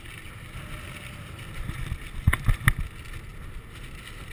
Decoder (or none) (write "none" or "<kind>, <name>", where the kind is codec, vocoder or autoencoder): none